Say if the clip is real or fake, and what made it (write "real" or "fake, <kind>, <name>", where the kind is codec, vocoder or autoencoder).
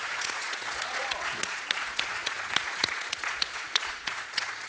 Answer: fake, vocoder, Vocos